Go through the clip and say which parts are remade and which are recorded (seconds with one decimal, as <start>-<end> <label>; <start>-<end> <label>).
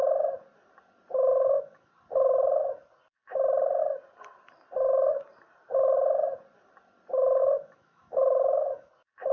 0.0-1.3 recorded; 1.3-1.9 remade; 1.9-7.4 recorded; 7.4-8.9 remade; 8.9-9.3 recorded